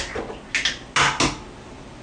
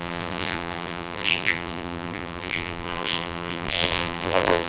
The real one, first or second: first